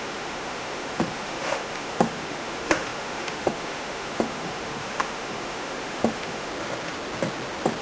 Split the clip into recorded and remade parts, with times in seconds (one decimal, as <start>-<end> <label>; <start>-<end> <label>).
0.0-6.5 remade; 6.5-7.8 recorded